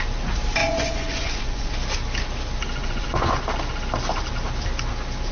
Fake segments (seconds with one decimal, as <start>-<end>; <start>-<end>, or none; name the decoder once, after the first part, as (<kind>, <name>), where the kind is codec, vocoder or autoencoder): 0.6-1.7 (vocoder, Vocos); 2.8-3.3